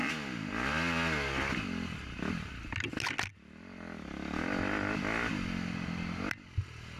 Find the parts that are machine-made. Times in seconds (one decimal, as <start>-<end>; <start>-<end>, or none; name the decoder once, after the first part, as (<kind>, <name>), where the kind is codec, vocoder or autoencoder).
none